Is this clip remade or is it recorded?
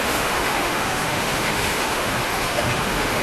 remade